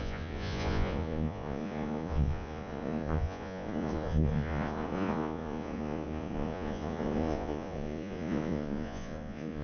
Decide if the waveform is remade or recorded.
remade